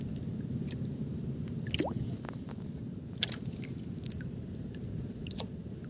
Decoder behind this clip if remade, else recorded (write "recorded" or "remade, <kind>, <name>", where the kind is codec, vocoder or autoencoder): recorded